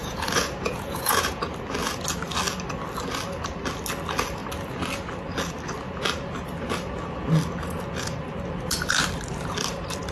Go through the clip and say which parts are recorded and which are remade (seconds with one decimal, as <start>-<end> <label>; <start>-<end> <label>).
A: 0.0-1.4 remade; 1.4-10.1 recorded